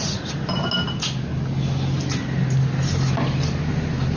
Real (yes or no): yes